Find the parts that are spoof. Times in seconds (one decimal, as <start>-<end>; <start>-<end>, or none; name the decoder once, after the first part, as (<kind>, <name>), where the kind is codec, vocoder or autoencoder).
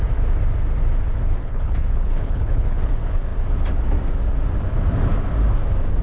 1.4-2.9 (codec, HILCodec)